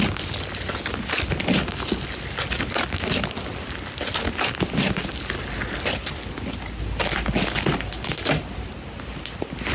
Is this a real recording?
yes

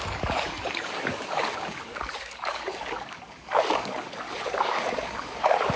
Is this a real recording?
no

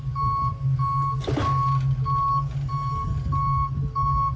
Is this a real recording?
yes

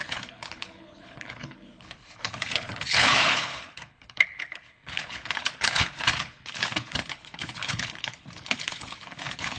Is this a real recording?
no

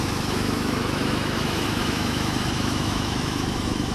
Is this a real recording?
no